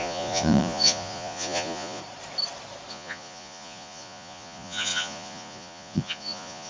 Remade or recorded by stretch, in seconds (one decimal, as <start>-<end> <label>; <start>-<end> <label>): 0.0-2.0 remade; 2.0-2.9 recorded; 2.9-6.7 remade